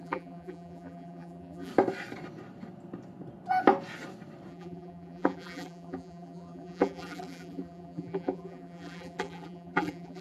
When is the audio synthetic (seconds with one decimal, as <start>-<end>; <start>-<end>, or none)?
0.0-1.7; 4.5-10.2